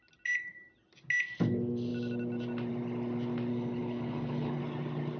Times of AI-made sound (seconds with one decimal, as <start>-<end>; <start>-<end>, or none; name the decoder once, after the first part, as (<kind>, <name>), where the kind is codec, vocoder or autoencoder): 3.5-4.6 (codec, HILCodec)